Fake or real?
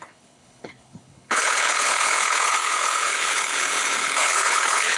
fake